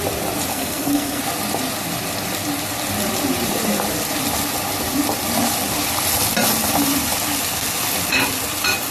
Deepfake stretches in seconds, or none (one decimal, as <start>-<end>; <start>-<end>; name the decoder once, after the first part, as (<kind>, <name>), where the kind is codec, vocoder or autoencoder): 0.5-1.2 (codec, SNAC)